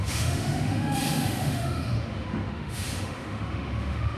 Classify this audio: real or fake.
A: fake